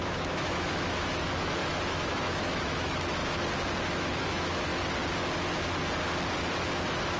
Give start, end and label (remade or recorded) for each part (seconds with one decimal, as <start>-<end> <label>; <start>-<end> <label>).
0.0-3.2 remade; 3.2-3.8 recorded; 3.8-4.7 remade; 4.7-7.2 recorded